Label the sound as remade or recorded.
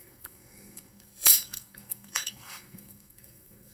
remade